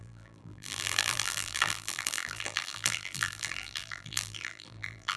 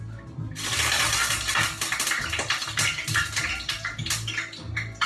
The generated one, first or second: first